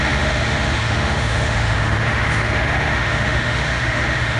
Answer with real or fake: fake